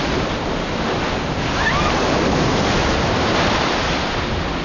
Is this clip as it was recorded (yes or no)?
yes